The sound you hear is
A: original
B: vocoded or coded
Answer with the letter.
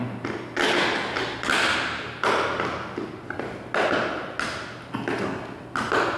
A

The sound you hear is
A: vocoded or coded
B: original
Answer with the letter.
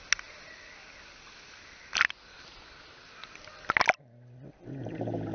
B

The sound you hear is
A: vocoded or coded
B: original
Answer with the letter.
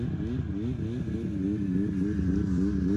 B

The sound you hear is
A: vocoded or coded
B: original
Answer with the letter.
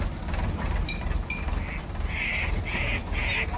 B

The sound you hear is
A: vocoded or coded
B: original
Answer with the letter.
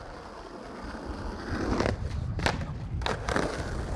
B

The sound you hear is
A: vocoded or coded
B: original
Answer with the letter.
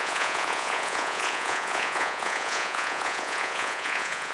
A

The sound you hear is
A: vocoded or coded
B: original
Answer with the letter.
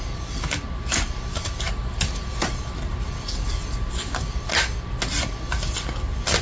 B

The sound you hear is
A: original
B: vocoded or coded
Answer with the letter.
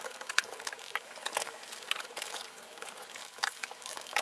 B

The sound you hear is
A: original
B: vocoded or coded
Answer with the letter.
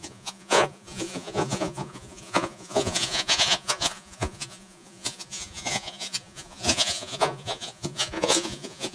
B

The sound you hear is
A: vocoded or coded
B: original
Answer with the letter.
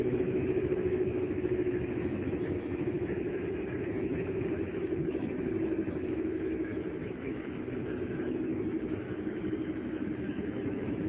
A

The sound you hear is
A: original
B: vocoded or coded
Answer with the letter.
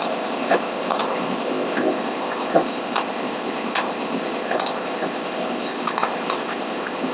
B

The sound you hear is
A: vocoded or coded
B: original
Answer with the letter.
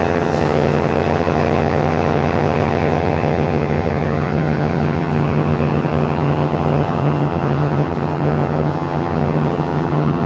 A